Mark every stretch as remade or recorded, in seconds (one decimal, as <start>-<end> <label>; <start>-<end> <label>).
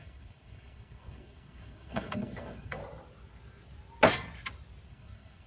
0.0-2.8 remade; 2.8-4.9 recorded; 4.9-5.5 remade